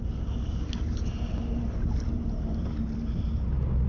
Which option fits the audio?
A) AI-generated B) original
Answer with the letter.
B